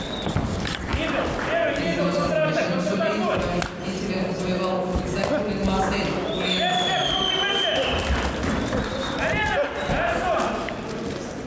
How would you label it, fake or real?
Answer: real